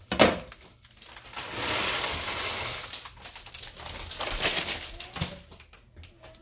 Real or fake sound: real